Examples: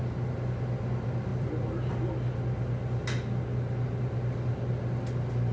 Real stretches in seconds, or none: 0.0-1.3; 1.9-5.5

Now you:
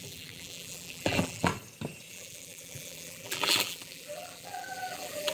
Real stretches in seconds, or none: 1.5-2.1

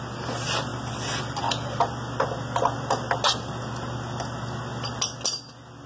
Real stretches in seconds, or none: 0.0-0.7; 1.4-5.9

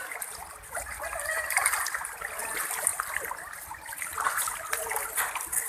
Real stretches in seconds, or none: 0.0-5.7

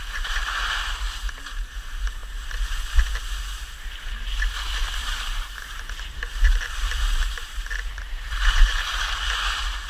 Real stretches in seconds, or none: 0.7-5.0; 9.0-9.9